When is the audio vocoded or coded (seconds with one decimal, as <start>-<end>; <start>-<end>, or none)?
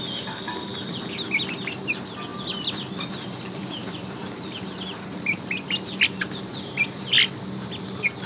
2.3-7.3